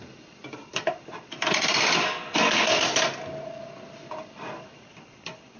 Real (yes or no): no